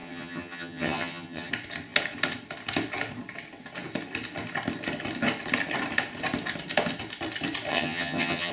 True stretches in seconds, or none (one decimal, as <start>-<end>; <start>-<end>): 1.5-7.7